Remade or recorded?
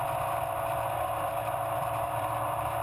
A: remade